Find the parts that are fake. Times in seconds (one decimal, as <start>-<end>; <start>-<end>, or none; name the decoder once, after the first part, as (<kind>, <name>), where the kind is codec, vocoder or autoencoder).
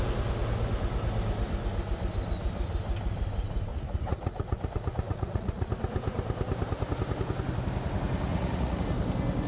3.7-5.7 (vocoder, Vocos); 8.3-8.8